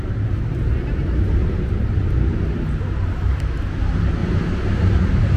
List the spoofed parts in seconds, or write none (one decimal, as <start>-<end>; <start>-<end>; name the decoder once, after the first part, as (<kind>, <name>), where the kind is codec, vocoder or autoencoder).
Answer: 1.4-2.0 (vocoder, BigVGAN v2); 4.2-5.4